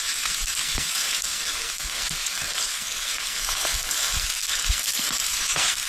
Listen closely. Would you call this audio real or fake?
fake